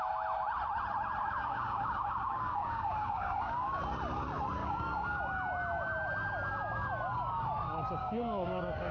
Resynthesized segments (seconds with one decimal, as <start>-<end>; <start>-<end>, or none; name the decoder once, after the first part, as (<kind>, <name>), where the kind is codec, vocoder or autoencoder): 1.2-3.8 (codec, DAC); 4.6-5.2; 8.0-8.9